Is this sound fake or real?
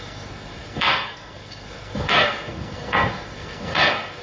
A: fake